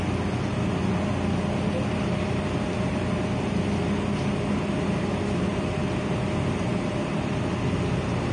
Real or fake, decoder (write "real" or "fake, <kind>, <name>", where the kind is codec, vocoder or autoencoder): real